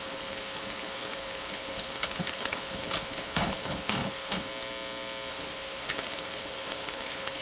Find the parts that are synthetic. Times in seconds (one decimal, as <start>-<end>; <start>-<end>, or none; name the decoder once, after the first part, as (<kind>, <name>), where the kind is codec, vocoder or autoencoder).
0.0-4.5 (codec, HILCodec); 5.3-7.4